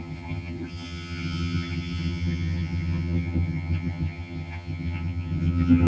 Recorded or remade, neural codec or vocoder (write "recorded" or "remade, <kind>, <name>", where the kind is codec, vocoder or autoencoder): remade, vocoder, HiFi-GAN